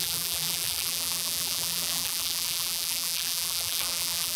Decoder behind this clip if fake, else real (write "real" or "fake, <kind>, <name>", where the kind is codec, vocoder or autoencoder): fake, vocoder, BigVGAN v2